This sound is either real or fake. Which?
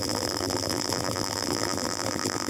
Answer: fake